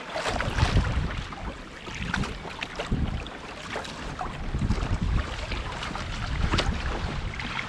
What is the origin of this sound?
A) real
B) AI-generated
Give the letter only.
A